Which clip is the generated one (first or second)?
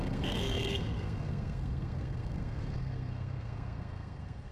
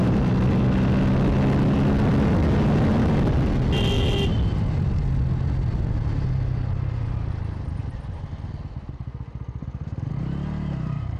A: first